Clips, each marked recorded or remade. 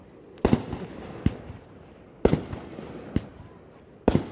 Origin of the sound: recorded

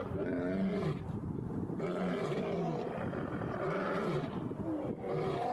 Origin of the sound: recorded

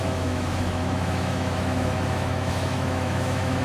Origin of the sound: remade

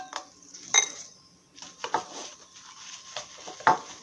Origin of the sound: recorded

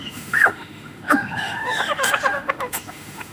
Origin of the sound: remade